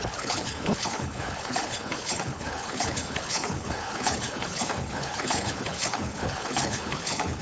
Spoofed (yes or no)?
yes